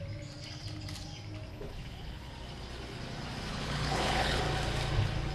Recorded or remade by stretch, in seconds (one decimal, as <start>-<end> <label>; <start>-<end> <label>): 0.0-1.5 recorded; 1.5-2.3 remade; 2.3-3.5 recorded; 3.5-4.4 remade; 4.4-5.3 recorded